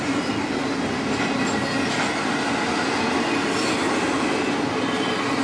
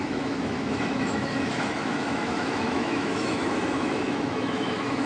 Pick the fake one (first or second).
second